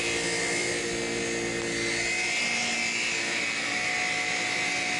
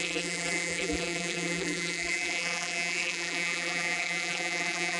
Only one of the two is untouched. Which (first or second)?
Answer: first